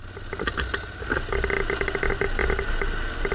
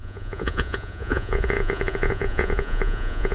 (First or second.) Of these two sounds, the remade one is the second